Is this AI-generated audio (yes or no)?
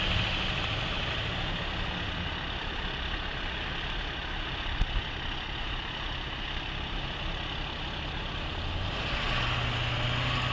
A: no